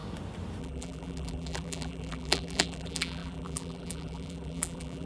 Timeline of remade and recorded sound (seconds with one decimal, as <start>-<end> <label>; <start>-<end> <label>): 0.0-0.6 recorded; 0.6-5.1 remade